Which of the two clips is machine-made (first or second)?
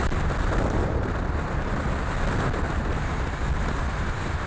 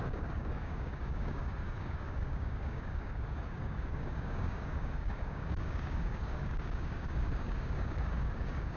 second